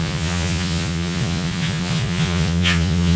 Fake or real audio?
fake